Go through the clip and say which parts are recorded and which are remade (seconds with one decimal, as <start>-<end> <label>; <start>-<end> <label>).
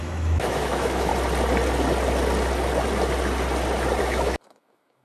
0.0-1.1 remade; 1.1-4.0 recorded; 4.0-5.0 remade